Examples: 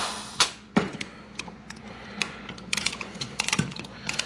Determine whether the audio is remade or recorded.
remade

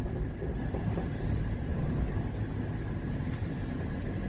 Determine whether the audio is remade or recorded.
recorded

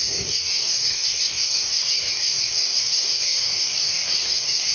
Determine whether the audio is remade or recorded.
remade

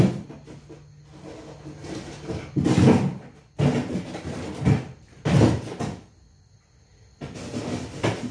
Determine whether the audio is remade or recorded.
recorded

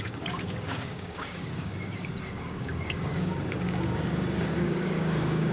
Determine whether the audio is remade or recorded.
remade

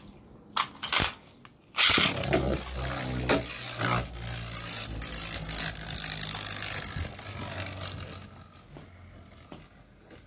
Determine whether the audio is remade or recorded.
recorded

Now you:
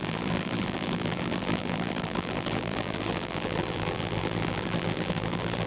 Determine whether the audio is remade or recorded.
remade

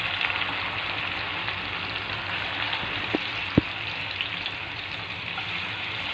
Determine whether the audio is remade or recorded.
recorded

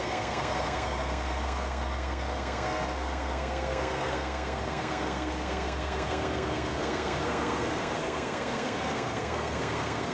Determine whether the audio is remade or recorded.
remade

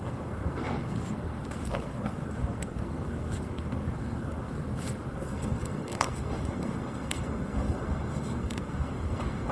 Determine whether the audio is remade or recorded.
remade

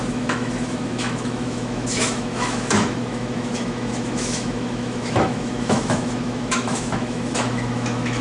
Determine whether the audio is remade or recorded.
remade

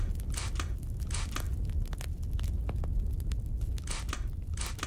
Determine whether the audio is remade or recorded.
recorded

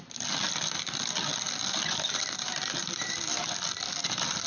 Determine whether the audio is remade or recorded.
remade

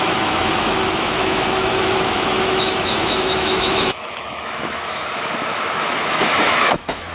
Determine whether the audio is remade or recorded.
remade